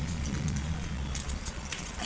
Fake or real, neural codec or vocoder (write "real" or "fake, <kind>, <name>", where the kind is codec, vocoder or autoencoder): fake, vocoder, Vocos